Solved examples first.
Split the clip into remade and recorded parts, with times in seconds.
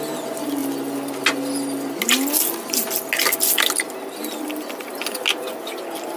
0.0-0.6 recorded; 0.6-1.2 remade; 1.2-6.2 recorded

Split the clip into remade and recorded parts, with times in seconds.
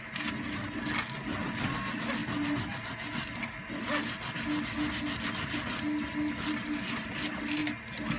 0.0-8.2 recorded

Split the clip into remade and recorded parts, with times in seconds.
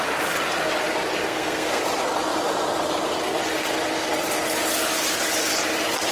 0.0-1.2 recorded; 1.2-1.8 remade; 1.8-6.1 recorded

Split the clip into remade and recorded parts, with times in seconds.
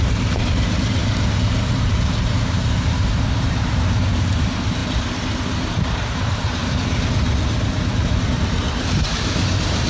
0.0-4.8 remade; 4.8-6.1 recorded; 6.1-6.6 remade; 6.6-7.5 recorded; 7.5-9.9 remade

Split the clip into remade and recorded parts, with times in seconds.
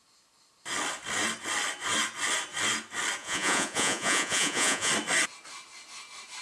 0.0-3.2 recorded; 3.2-4.9 remade; 4.9-6.4 recorded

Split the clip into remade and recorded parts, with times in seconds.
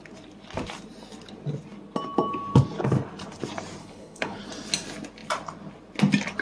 0.0-3.8 recorded; 3.8-4.4 remade; 4.4-6.4 recorded